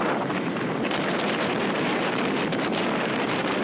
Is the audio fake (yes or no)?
yes